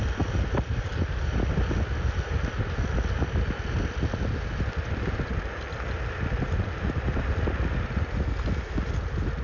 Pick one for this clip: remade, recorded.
recorded